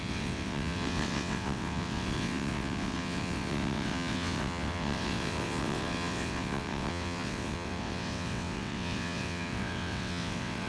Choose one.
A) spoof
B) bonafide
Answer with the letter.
A